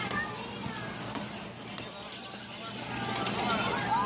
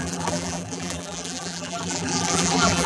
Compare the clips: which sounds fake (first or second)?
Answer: second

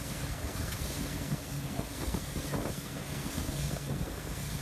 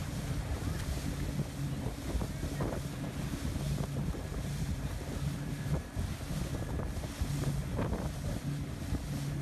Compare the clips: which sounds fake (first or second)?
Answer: first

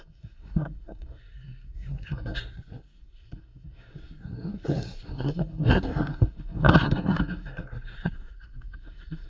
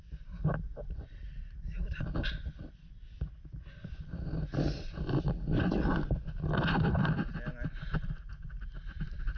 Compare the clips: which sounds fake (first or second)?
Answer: first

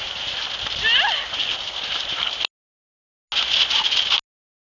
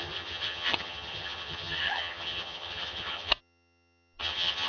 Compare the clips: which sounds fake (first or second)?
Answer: second